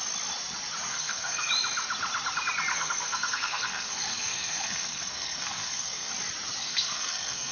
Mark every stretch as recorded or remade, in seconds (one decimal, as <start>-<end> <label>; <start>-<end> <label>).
0.0-0.9 recorded; 0.9-1.5 remade; 1.5-2.7 recorded; 2.7-6.1 remade; 6.1-6.6 recorded; 6.6-7.5 remade